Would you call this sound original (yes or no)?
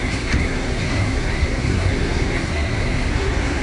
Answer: no